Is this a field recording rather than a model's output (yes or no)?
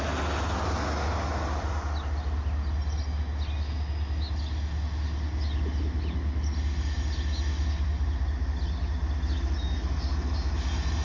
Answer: yes